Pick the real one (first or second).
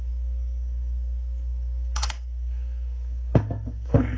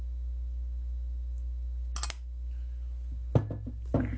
second